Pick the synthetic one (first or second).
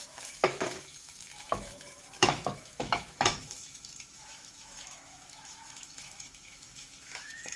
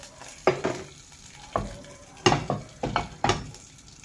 first